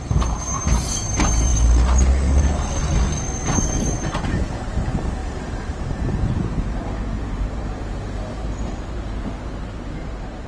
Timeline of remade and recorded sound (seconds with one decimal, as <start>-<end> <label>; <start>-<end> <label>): 0.0-1.5 remade; 1.5-4.2 recorded; 4.2-10.5 remade